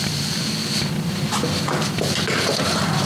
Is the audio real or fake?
real